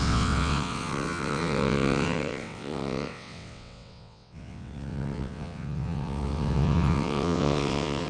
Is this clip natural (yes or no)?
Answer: no